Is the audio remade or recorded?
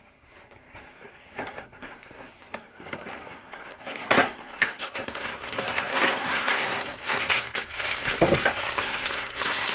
remade